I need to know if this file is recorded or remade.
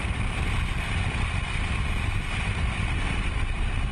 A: remade